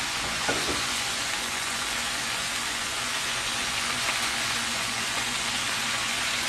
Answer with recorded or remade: remade